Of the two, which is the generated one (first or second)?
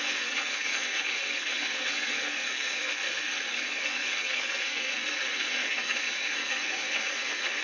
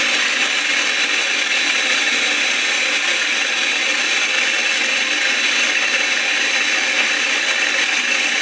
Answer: first